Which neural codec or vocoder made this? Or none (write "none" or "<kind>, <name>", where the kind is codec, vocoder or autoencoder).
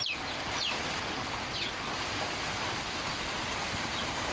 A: none